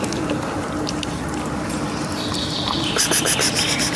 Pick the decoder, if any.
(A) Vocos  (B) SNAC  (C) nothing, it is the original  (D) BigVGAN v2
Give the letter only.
C